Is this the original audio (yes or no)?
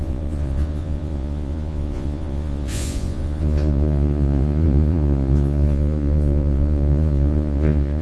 no